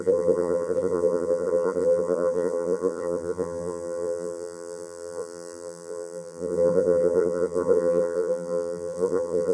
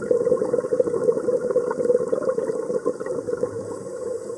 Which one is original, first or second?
second